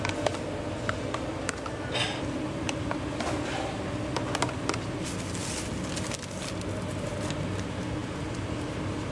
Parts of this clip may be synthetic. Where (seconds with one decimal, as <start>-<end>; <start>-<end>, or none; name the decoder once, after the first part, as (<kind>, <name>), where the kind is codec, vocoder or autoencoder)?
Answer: none